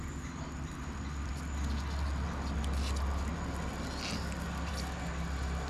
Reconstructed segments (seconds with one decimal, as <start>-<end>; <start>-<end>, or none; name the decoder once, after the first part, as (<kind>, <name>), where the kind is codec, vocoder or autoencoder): none